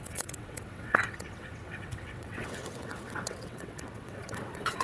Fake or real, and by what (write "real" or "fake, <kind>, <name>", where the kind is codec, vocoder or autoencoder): fake, vocoder, WaveNeXt